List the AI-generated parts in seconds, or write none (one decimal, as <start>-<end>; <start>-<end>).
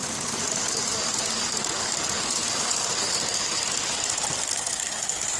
none